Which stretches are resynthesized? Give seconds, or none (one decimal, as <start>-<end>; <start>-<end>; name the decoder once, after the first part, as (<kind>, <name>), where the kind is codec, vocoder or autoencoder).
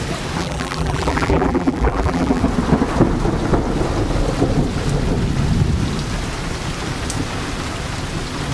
0.4-2.4 (vocoder, BigVGAN v2)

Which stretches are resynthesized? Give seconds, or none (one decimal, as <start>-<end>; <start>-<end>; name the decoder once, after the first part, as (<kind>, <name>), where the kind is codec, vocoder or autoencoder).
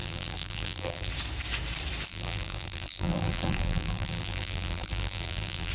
0.0-1.1 (vocoder, BigVGAN v2); 2.1-5.7